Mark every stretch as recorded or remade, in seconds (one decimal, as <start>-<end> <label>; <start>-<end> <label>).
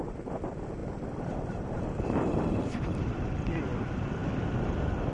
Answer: 0.0-0.8 recorded; 0.8-3.1 remade; 3.1-5.1 recorded